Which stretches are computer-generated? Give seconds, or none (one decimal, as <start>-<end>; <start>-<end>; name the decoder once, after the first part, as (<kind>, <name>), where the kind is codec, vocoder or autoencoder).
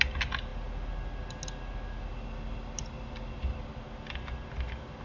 none